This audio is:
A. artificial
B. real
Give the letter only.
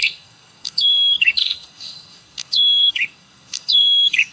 A